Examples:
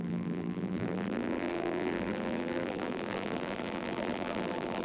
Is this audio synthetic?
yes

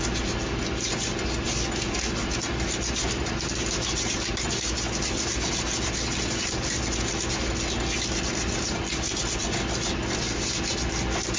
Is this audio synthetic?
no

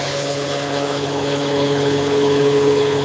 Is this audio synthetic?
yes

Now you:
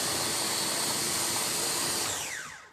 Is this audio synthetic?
yes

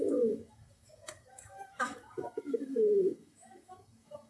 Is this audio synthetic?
yes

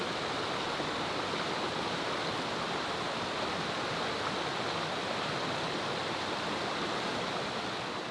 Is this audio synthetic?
no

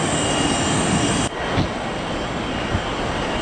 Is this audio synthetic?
no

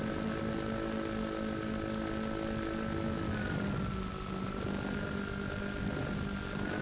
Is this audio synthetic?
no